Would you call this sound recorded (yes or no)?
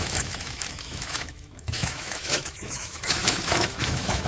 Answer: no